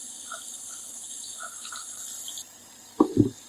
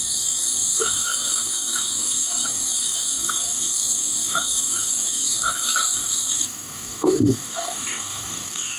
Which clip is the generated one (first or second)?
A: second